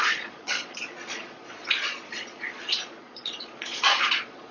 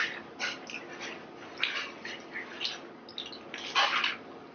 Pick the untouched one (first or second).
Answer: second